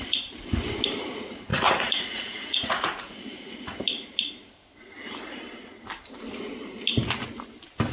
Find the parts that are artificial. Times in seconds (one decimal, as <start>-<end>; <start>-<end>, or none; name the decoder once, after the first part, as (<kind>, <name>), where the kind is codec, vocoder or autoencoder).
1.5-3.7 (vocoder, Vocos)